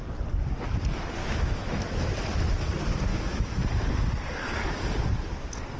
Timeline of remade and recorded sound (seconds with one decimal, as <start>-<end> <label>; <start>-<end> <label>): 0.0-1.2 recorded; 1.2-2.2 remade; 2.2-3.1 recorded; 3.1-3.6 remade; 3.6-5.8 recorded